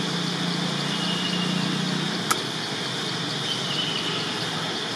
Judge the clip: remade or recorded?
recorded